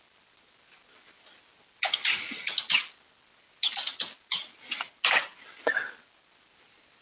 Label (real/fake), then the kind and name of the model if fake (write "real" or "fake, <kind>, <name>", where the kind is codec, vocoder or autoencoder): real